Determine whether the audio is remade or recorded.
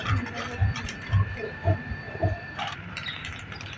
remade